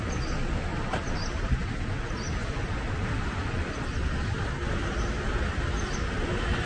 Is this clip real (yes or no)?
yes